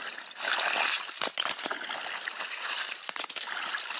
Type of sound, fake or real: real